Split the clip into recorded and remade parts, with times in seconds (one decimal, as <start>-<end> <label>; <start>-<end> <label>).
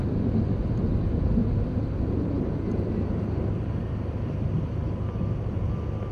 0.0-6.1 recorded